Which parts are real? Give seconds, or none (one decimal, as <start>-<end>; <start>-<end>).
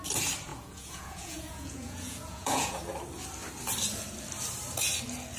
0.0-0.5; 2.8-5.4